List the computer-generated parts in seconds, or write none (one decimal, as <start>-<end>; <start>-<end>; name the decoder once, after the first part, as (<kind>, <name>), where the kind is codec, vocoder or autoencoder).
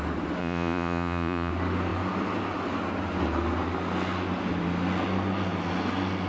0.4-1.5 (vocoder, Vocos)